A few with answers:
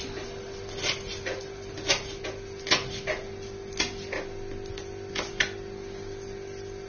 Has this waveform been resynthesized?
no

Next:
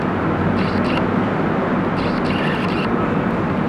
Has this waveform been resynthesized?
no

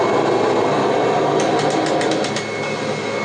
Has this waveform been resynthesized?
no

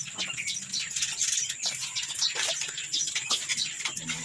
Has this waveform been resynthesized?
no